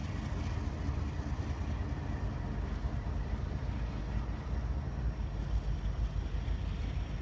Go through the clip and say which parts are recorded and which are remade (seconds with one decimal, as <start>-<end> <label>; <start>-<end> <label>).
0.0-7.2 recorded